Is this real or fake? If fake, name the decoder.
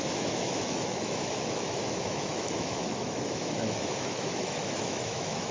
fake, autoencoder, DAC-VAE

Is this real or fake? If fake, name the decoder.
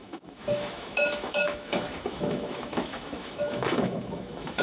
fake, autoencoder, DAC-VAE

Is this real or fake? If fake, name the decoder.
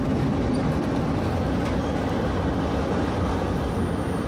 real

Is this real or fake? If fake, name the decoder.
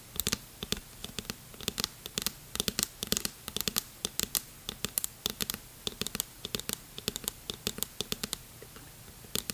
real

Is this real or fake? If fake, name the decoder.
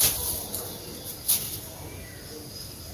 real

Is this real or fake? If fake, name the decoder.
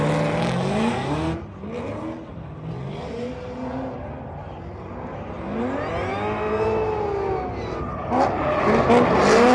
real